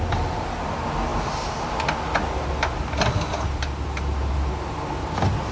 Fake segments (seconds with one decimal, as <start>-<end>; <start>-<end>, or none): 0.0-1.1; 1.7-5.5